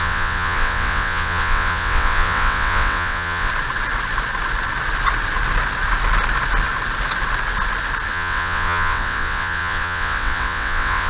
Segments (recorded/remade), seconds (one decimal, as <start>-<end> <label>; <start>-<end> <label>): 0.0-3.5 remade; 3.5-8.1 recorded; 8.1-11.1 remade